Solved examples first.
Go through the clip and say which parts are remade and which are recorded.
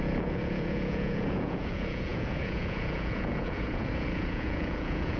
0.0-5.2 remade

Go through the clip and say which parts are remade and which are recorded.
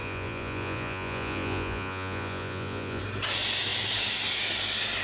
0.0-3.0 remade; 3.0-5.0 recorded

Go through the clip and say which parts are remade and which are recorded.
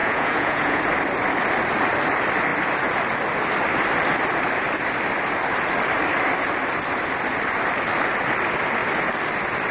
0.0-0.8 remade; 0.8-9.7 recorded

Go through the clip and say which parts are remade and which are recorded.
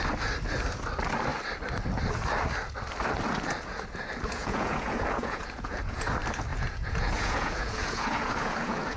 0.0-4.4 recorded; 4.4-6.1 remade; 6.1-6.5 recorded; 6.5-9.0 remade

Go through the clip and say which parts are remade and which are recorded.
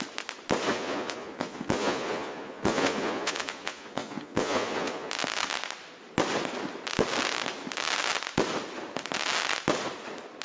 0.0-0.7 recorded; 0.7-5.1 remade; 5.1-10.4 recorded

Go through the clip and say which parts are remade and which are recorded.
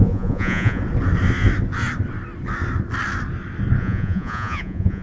0.0-0.8 remade; 0.8-3.8 recorded; 3.8-5.0 remade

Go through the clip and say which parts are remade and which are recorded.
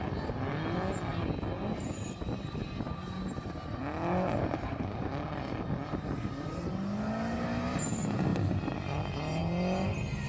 0.0-10.3 recorded